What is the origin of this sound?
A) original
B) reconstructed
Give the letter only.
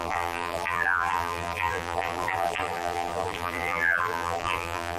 B